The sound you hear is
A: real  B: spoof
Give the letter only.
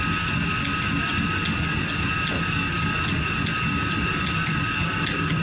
A